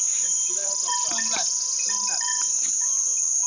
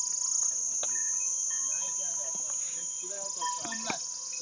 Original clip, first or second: second